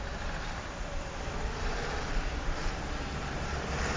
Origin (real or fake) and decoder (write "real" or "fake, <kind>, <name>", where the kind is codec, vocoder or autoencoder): real